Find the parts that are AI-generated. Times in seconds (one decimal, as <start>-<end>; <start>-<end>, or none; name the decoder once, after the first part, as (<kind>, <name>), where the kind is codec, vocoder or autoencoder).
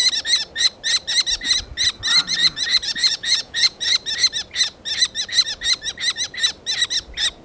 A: 2.2-3.9 (vocoder, Vocos)